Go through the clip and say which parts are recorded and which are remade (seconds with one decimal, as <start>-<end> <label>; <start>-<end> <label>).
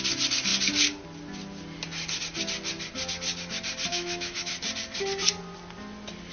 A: 0.0-3.9 recorded; 3.9-4.5 remade; 4.5-6.3 recorded